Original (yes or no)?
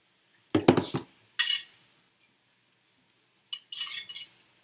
yes